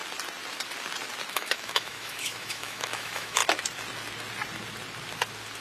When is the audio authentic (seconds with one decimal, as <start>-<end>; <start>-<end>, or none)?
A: 0.0-1.3; 3.4-5.6